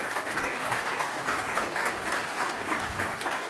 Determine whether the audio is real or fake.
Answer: fake